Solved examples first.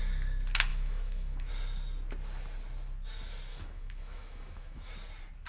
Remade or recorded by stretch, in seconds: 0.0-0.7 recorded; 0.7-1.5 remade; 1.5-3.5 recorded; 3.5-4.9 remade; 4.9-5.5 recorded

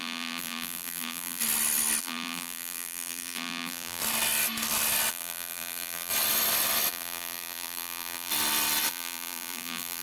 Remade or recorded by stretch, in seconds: 0.0-1.4 remade; 1.4-2.0 recorded; 2.0-4.0 remade; 4.0-5.1 recorded; 5.1-6.1 remade; 6.1-6.9 recorded; 6.9-8.3 remade; 8.3-8.9 recorded; 8.9-10.0 remade

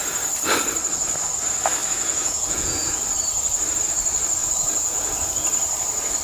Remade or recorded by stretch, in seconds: 0.0-1.8 recorded; 1.8-2.9 remade; 2.9-4.4 recorded; 4.4-5.3 remade; 5.3-6.2 recorded

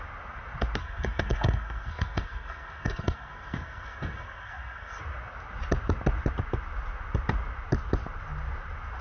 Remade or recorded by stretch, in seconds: 0.0-0.8 recorded; 0.8-5.0 remade; 5.0-9.0 recorded